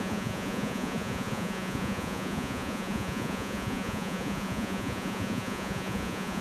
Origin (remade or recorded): remade